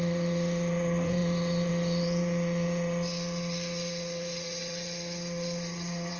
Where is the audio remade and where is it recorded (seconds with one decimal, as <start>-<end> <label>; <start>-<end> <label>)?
0.0-6.2 remade

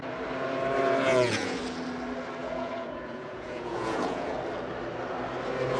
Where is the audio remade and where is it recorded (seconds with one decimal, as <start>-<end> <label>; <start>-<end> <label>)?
0.0-1.1 recorded; 1.1-1.6 remade; 1.6-2.4 recorded; 2.4-4.3 remade; 4.3-5.8 recorded

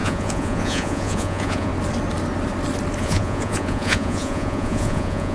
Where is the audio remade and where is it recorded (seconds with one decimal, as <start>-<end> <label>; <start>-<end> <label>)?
0.0-1.7 remade; 1.7-3.0 recorded; 3.0-5.3 remade

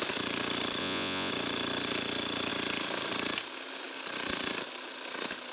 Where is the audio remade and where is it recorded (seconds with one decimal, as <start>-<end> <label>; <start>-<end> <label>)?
0.0-0.8 recorded; 0.8-1.3 remade; 1.3-5.5 recorded